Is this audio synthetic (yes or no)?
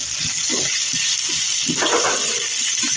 no